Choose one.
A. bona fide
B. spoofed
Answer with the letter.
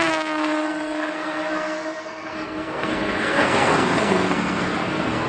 B